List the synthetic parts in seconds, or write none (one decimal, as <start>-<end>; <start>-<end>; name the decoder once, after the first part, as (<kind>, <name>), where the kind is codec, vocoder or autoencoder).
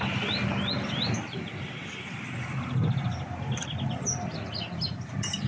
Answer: none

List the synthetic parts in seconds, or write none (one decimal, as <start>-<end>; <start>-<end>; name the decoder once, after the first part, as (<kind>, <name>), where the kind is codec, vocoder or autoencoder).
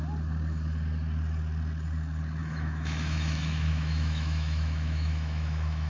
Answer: 2.4-5.9 (autoencoder, DAC-VAE)